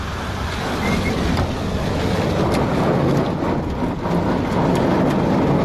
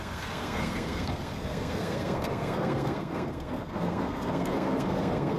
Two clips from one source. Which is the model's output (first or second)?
second